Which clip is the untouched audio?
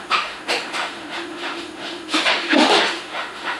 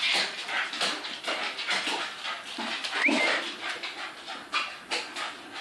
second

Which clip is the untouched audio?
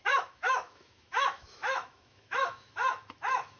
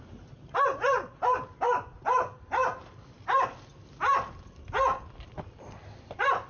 second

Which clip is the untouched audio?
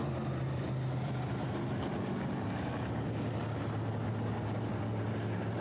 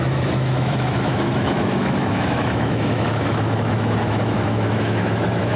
first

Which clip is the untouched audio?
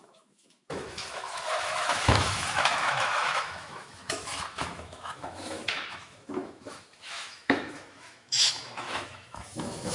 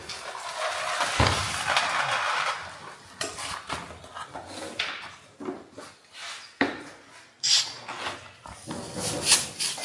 second